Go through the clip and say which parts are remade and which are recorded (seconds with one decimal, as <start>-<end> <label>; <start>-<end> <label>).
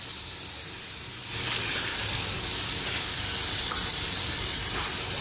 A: 0.0-1.9 recorded; 1.9-3.2 remade; 3.2-5.2 recorded